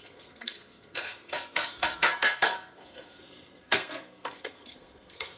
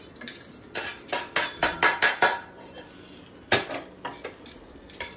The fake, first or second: first